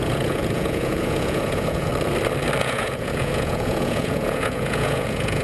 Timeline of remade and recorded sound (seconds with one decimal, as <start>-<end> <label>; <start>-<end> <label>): 0.0-1.9 remade; 1.9-2.6 recorded; 2.6-5.4 remade